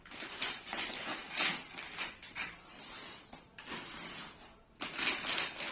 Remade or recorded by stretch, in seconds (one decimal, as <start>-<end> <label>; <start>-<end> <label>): 0.0-1.1 remade; 1.1-2.0 recorded; 2.0-2.4 remade; 2.4-5.7 recorded